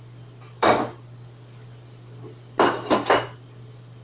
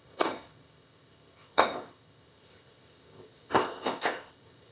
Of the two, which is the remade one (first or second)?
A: second